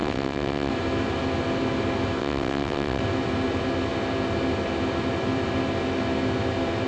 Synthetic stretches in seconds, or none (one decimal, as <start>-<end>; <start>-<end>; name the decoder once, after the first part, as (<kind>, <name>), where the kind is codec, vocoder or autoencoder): 0.0-0.7 (vocoder, WaveNeXt); 2.2-3.0